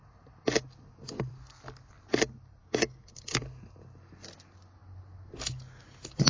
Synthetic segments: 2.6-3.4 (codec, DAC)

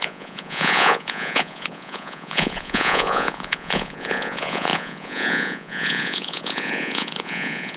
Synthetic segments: 0.0-7.8 (vocoder, Vocos)

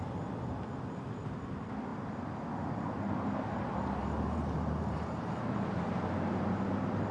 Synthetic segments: 4.0-5.4 (vocoder, BigVGAN v2)

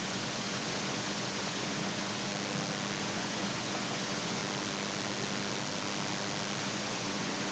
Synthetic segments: 0.0-2.3 (vocoder, Vocos); 3.0-4.4; 6.6-7.5

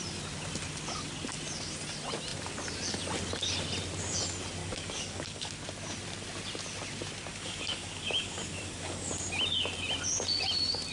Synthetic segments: 4.6-5.5 (codec, DAC); 7.3-9.1